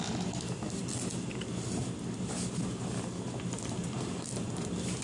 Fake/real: real